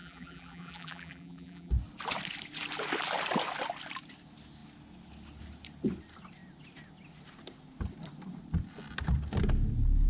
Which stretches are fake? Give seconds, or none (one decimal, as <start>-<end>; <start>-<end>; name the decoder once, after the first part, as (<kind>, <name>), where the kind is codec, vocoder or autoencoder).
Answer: 0.0-1.7 (vocoder, BigVGAN v2)